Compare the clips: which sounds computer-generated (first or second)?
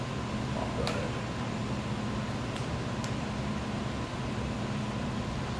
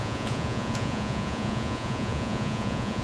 second